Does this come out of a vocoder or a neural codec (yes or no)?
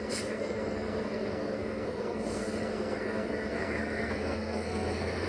yes